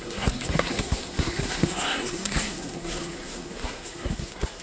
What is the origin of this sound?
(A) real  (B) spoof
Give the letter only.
B